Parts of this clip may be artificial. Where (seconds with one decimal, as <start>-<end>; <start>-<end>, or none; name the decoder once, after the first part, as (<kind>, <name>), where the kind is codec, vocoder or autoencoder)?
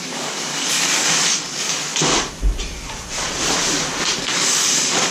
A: 0.0-1.9 (codec, DAC); 4.2-5.1